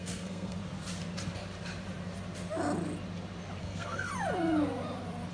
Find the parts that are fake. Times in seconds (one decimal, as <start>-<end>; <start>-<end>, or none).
0.0-0.6; 3.6-4.1